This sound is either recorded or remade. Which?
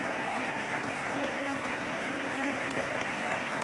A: remade